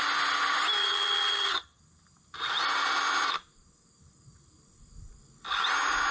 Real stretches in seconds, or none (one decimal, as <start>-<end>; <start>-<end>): 0.0-0.8; 1.8-6.1